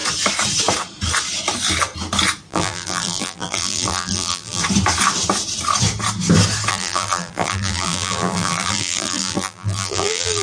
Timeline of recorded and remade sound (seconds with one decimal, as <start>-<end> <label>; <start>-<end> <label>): 0.0-2.5 recorded; 2.5-4.6 remade; 4.6-6.7 recorded; 6.7-10.4 remade